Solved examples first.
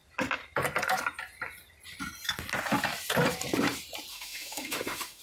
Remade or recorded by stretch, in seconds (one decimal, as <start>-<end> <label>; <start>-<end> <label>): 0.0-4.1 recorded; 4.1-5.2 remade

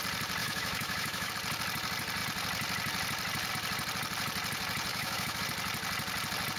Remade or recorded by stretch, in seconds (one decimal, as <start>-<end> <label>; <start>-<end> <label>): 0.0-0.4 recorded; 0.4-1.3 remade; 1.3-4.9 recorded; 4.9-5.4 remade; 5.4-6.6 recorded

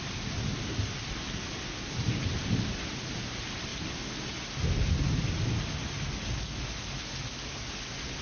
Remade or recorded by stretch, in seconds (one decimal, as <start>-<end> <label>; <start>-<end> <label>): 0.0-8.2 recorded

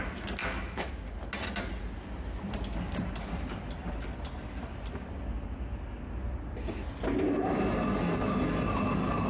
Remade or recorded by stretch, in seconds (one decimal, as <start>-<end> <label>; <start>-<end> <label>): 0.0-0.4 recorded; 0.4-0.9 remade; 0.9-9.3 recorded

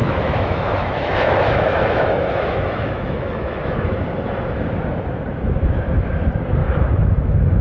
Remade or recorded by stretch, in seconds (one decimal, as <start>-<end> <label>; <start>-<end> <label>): 0.0-3.9 remade; 3.9-6.6 recorded; 6.6-7.6 remade

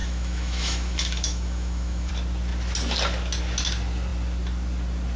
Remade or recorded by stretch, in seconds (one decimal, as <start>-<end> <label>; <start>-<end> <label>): 0.0-2.1 remade; 2.1-5.2 recorded

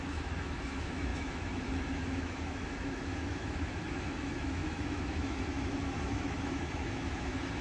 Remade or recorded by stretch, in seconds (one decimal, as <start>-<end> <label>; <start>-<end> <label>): 0.0-7.6 remade